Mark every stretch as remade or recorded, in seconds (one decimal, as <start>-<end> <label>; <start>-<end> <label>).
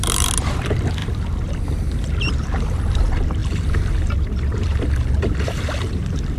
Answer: 0.0-0.5 recorded; 0.5-4.7 remade; 4.7-5.2 recorded; 5.2-6.4 remade